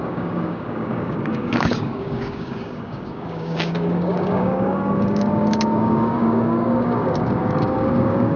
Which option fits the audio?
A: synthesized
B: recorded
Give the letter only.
A